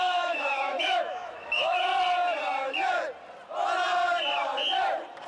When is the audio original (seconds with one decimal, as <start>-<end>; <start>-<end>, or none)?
1.9-5.3